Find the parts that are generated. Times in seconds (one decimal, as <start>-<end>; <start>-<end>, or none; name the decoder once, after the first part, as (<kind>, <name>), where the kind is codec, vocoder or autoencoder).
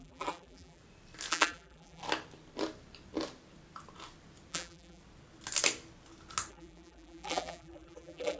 0.0-0.8 (vocoder, BigVGAN v2); 1.3-2.0; 4.5-5.0; 6.5-8.4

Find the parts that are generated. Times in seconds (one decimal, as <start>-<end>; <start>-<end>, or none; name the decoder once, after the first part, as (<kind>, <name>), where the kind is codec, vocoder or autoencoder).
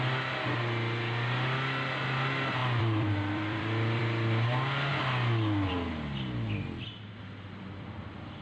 2.6-4.0 (vocoder, BigVGAN v2)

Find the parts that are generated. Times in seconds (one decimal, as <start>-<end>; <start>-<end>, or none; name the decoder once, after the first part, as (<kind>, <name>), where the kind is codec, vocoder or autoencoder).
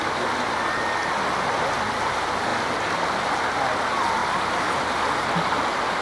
none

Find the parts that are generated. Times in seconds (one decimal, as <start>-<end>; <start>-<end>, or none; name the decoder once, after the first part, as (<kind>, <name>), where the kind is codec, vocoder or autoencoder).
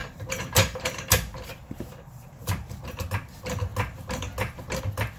0.0-3.1 (vocoder, BigVGAN v2)